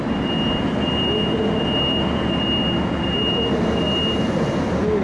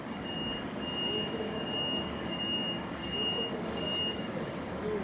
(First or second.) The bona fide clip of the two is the first